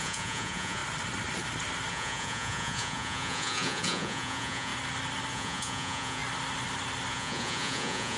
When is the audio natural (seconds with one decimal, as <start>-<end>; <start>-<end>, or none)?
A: 0.8-1.9; 4.7-5.3; 6.2-7.1